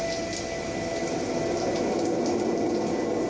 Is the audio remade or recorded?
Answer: recorded